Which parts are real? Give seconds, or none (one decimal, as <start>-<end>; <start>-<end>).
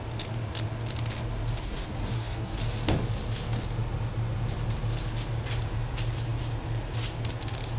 0.0-1.6; 2.6-7.8